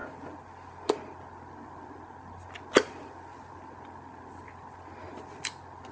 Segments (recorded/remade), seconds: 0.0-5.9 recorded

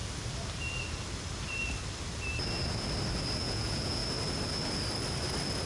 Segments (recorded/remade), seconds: 0.0-3.4 recorded; 3.4-4.0 remade; 4.0-5.7 recorded

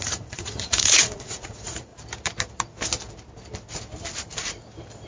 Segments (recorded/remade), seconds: 0.0-1.9 remade; 1.9-5.1 recorded

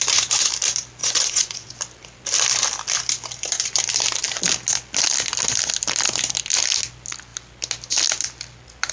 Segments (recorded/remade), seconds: 0.0-1.0 recorded; 1.0-1.8 remade; 1.8-8.9 recorded

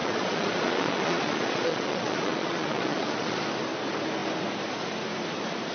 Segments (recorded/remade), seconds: 0.0-3.4 remade; 3.4-5.7 recorded